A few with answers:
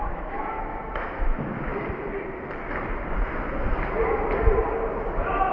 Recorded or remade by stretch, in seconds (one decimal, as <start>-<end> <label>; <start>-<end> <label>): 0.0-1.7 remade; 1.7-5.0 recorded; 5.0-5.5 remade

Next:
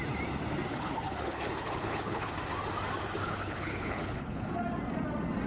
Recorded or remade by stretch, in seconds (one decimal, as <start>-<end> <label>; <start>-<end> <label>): 0.0-0.7 recorded; 0.7-2.3 remade; 2.3-3.2 recorded; 3.2-4.5 remade; 4.5-5.5 recorded

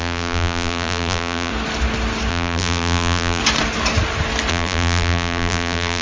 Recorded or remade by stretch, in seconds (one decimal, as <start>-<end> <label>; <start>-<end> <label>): 0.0-1.5 remade; 1.5-2.3 recorded; 2.3-3.4 remade; 3.4-4.5 recorded; 4.5-6.0 remade

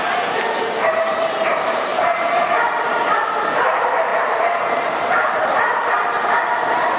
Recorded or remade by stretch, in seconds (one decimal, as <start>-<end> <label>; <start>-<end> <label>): 0.0-1.9 remade; 1.9-3.6 recorded; 3.6-7.0 remade

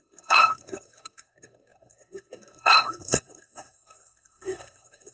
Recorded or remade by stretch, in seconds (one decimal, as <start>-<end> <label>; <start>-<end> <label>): 0.0-5.1 remade

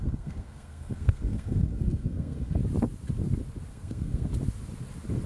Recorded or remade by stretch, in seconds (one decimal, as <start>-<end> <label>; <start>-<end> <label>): 0.0-2.6 remade; 2.6-3.7 recorded; 3.7-4.3 remade; 4.3-5.3 recorded

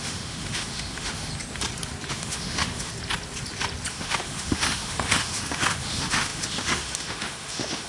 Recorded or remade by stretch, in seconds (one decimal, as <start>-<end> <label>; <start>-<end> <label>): 0.0-1.3 remade; 1.3-2.1 recorded; 2.1-2.9 remade; 2.9-3.9 recorded; 3.9-7.9 remade

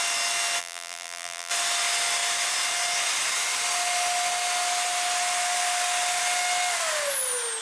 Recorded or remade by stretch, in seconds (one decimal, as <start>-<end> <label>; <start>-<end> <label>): 0.0-0.6 recorded; 0.6-1.5 remade; 1.5-7.6 recorded